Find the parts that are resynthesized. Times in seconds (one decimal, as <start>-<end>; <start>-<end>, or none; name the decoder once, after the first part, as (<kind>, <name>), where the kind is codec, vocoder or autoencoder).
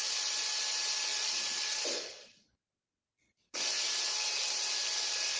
1.1-3.6 (vocoder, Vocos)